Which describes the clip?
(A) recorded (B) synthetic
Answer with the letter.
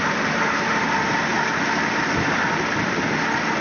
A